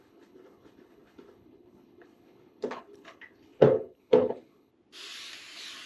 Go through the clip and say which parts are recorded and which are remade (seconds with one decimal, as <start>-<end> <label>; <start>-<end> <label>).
0.0-4.7 remade; 4.7-5.9 recorded